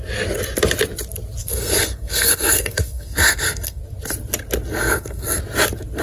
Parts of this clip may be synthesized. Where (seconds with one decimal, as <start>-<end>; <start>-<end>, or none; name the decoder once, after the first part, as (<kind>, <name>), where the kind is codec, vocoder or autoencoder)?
1.4-3.8 (codec, SNAC); 4.8-5.4